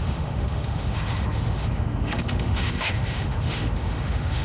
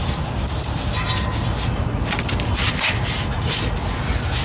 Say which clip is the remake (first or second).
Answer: first